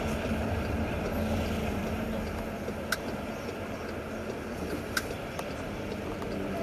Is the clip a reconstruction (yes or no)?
no